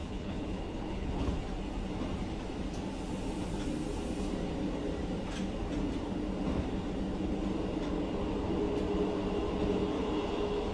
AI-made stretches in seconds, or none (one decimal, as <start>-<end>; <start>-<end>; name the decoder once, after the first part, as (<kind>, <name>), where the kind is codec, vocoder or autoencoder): 0.0-1.3 (codec, HILCodec)

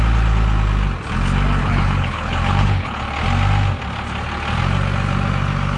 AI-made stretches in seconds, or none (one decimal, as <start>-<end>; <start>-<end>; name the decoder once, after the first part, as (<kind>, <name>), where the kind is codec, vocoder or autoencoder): 1.6-3.0 (codec, HILCodec)